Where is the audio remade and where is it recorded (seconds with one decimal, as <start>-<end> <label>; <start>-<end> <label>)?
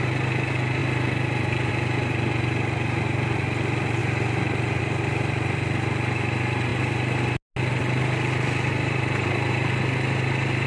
0.0-10.7 recorded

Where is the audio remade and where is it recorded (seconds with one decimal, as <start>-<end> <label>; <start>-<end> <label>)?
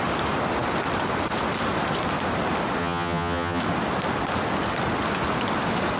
0.0-2.8 recorded; 2.8-3.6 remade; 3.6-6.0 recorded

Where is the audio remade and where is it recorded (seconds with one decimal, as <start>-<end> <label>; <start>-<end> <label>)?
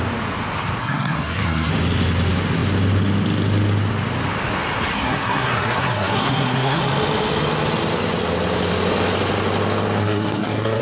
0.0-0.8 recorded; 0.8-1.7 remade; 1.7-4.9 recorded; 4.9-6.8 remade; 6.8-10.0 recorded; 10.0-10.8 remade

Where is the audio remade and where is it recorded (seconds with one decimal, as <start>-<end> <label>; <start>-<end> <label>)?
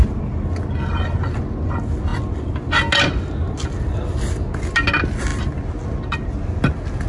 0.0-7.1 recorded